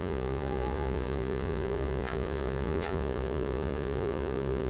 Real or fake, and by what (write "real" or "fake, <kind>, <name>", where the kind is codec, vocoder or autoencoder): fake, vocoder, Vocos